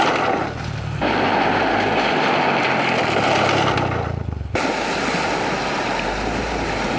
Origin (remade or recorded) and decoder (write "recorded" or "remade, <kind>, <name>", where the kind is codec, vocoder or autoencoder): recorded